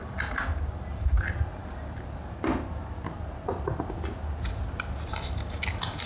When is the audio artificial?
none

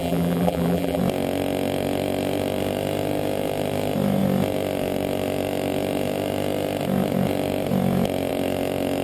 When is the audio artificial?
0.0-1.0 (vocoder, BigVGAN v2)